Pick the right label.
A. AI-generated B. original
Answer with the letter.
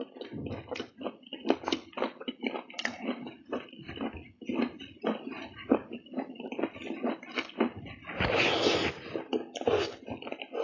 B